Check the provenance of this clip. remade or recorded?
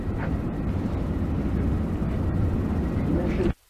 remade